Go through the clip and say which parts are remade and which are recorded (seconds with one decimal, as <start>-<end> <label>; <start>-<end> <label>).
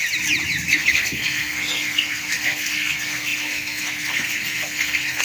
0.0-0.7 recorded; 0.7-5.2 remade